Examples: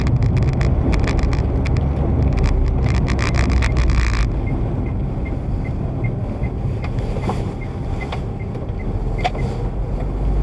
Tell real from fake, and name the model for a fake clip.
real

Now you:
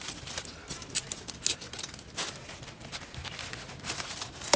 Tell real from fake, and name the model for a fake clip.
real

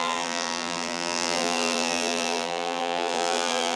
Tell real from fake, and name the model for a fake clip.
fake, vocoder, BigVGAN v2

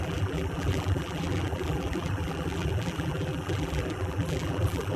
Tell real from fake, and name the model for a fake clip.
fake, vocoder, BigVGAN v2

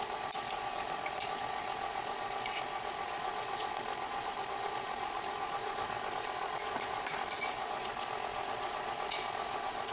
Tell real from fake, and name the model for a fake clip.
fake, vocoder, Vocos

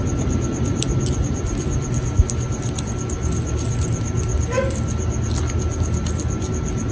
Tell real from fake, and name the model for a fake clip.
real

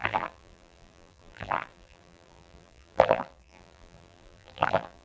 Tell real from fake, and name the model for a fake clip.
fake, vocoder, BigVGAN v2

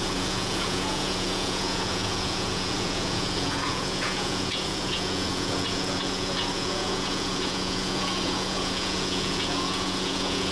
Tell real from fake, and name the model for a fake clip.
fake, vocoder, Vocos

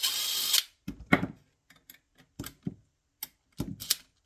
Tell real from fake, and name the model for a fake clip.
real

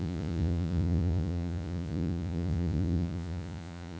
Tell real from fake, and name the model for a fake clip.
fake, vocoder, Vocos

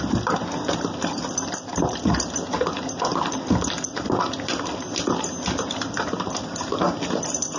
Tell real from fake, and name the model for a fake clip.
fake, vocoder, BigVGAN v2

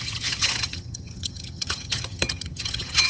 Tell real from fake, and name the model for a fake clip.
fake, vocoder, HiFi-GAN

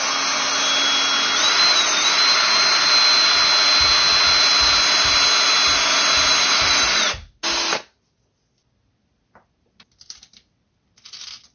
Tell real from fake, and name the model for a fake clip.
real